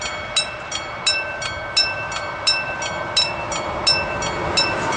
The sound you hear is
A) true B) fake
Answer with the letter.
A